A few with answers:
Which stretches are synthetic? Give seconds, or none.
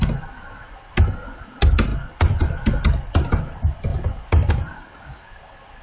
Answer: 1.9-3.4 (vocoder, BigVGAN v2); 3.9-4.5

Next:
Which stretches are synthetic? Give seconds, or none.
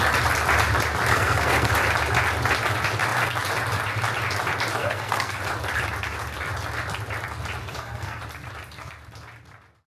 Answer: 1.1-1.7 (codec, SNAC); 4.8-5.4; 7.6-8.2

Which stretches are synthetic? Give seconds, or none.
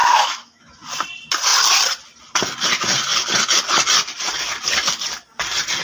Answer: 0.0-0.7 (autoencoder, DAC-VAE)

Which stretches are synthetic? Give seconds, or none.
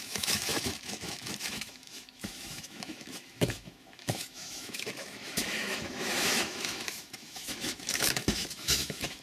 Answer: 0.0-9.2 (autoencoder, DAC-VAE)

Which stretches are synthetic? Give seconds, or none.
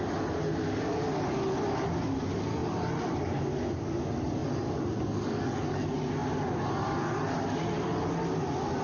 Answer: 2.6-3.4 (vocoder, BigVGAN v2); 6.2-7.7